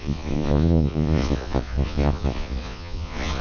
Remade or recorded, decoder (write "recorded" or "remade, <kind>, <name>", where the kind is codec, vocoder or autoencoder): remade, vocoder, Vocos